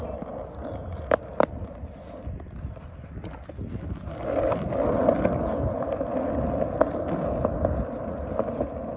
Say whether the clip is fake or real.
real